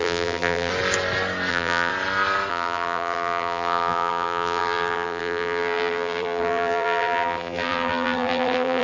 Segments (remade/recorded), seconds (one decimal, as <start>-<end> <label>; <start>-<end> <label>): 0.0-0.7 remade; 0.7-1.5 recorded; 1.5-1.9 remade; 1.9-2.5 recorded; 2.5-8.8 remade